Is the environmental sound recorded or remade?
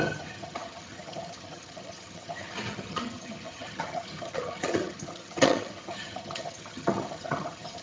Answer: remade